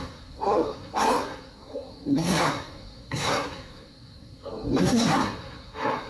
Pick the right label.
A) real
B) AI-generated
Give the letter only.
B